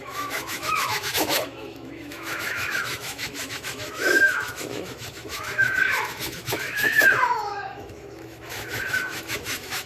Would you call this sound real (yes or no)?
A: no